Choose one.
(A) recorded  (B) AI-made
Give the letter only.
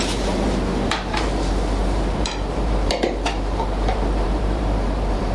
B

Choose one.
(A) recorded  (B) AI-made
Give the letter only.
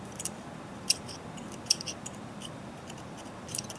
B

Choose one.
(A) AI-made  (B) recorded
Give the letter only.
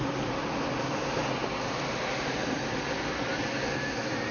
B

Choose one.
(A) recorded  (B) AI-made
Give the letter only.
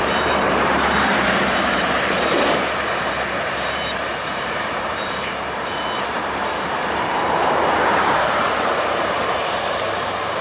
B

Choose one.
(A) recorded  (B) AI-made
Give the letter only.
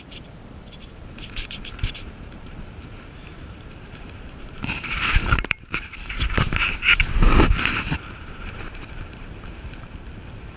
B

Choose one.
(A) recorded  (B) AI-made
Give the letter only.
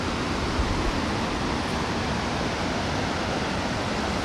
A